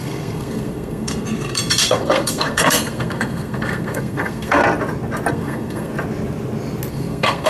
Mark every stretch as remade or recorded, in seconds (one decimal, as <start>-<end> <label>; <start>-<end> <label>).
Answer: 0.0-4.6 remade; 4.6-5.3 recorded; 5.3-5.9 remade; 5.9-6.9 recorded; 6.9-7.5 remade